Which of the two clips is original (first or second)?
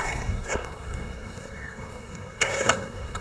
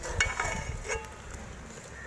second